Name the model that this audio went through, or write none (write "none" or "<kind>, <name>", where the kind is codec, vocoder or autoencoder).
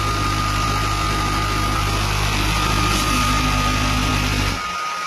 none